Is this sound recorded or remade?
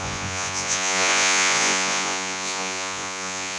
remade